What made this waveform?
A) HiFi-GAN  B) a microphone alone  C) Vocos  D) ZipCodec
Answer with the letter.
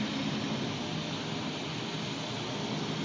B